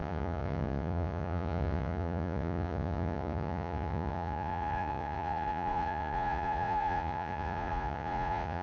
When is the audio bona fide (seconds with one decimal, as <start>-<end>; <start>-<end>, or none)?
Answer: none